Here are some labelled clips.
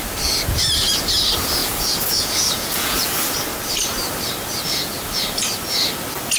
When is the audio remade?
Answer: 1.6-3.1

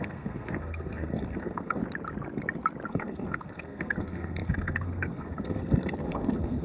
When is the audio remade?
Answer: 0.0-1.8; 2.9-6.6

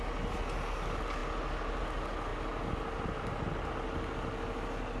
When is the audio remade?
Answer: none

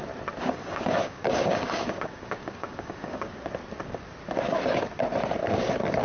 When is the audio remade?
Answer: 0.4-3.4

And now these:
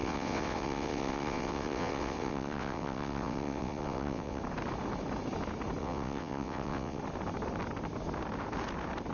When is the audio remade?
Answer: 0.0-4.4; 5.8-7.0

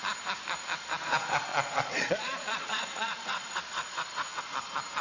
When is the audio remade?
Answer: 1.5-4.4